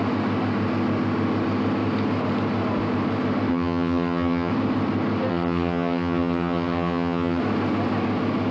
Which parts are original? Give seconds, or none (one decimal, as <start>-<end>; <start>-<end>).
0.0-3.5; 4.5-5.3; 7.4-8.5